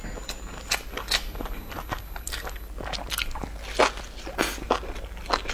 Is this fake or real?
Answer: real